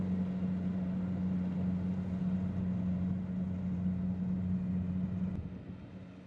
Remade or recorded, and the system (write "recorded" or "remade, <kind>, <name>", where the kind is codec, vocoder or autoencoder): recorded